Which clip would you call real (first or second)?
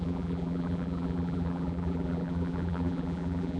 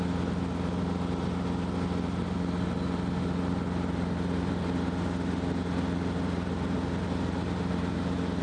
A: second